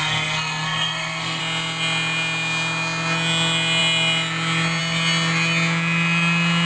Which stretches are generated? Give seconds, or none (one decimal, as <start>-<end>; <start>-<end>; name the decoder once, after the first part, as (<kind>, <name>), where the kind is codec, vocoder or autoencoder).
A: 0.0-1.4 (codec, SNAC)